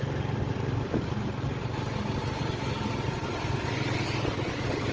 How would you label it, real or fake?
real